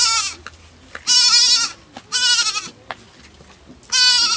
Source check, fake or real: real